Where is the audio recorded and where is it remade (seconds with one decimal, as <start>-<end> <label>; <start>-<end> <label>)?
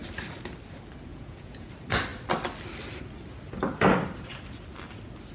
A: 0.0-1.1 recorded; 1.1-1.7 remade; 1.7-5.3 recorded